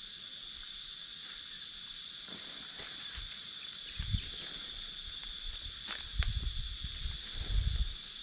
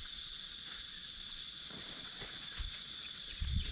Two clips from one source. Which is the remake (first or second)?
second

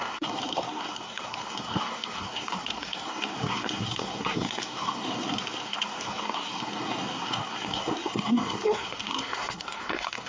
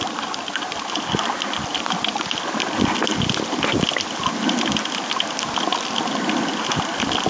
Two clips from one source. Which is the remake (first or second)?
first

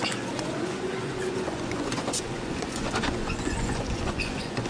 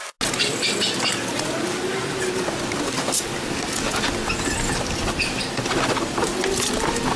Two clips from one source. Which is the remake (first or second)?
first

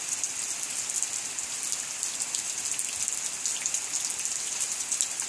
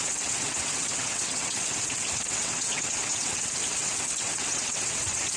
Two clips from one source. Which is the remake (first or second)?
second